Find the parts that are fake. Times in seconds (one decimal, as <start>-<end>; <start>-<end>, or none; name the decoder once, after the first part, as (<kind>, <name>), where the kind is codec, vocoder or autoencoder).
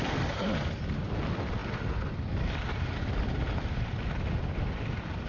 none